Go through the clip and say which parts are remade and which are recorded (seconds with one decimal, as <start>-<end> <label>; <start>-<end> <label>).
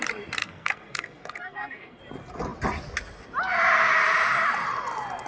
0.0-0.4 recorded; 0.4-2.0 remade; 2.0-5.3 recorded